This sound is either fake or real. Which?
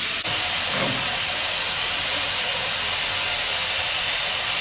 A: fake